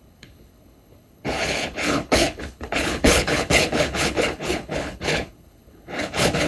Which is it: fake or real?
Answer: fake